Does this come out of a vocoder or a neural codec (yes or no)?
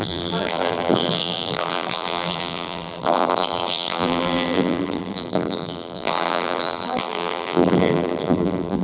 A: yes